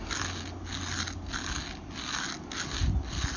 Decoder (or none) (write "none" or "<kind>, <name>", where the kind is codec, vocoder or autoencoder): none